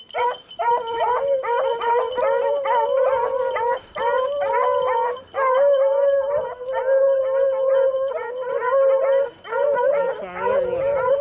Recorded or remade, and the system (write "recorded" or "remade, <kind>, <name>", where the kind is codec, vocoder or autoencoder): recorded